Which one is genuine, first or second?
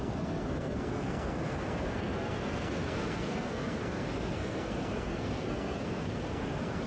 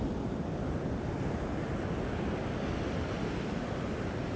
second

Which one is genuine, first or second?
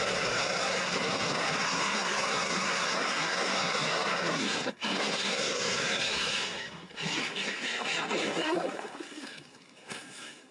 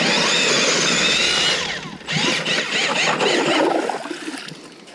second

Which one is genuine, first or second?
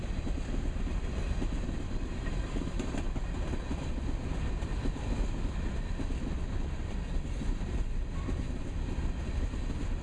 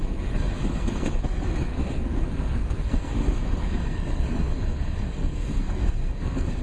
first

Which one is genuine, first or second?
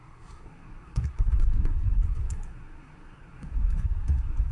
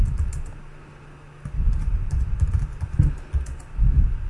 second